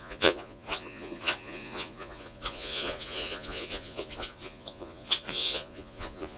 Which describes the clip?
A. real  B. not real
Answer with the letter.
B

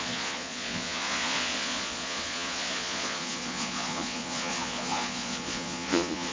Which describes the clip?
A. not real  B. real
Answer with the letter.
A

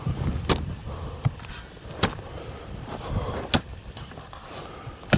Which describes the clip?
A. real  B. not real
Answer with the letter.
A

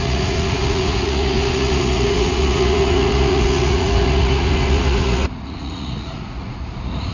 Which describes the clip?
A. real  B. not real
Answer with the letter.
B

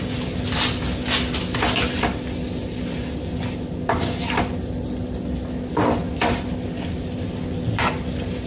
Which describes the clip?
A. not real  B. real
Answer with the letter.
B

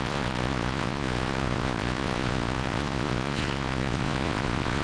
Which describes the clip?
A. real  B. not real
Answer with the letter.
B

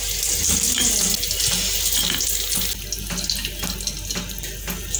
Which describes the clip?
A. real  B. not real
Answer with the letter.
A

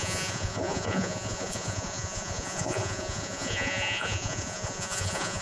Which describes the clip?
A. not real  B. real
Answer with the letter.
A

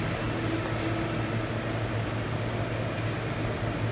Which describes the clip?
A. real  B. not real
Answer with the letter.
A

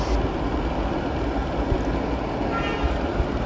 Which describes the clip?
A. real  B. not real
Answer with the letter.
A